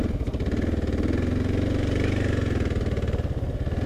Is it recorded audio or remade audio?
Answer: recorded